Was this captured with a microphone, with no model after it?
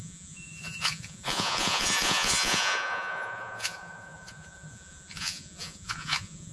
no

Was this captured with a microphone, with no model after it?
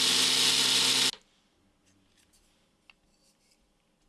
yes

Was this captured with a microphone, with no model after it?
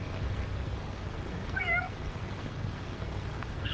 no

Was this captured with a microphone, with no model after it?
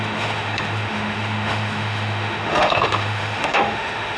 no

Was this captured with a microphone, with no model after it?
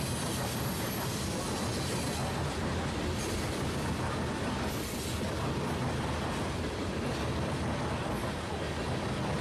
yes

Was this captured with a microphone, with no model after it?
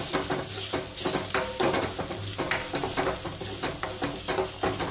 yes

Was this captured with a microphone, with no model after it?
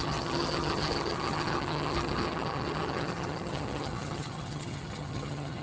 no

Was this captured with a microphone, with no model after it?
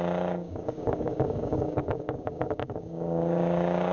no